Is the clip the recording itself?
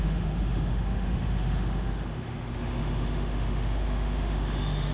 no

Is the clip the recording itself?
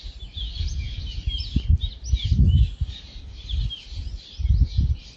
yes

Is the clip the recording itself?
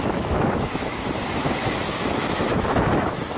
no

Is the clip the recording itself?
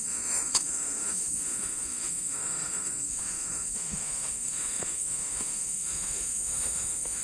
no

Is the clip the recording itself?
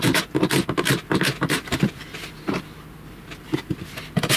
yes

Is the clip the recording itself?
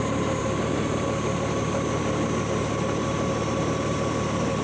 yes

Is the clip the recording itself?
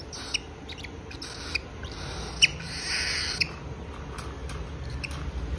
yes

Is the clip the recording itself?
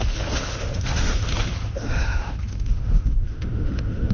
no